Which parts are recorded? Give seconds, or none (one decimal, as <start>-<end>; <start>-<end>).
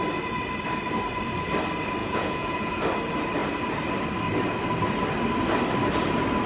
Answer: 0.0-2.0; 2.8-6.5